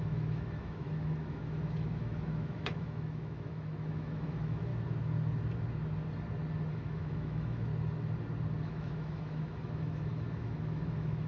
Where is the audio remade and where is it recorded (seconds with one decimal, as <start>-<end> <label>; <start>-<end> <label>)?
0.0-4.7 remade; 4.7-6.7 recorded; 6.7-7.7 remade; 7.7-8.6 recorded; 8.6-11.3 remade